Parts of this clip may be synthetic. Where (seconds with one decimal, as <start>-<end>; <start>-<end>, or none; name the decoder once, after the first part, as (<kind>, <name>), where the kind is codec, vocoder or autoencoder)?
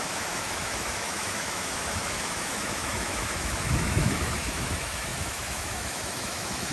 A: 0.0-6.7 (autoencoder, DAC-VAE)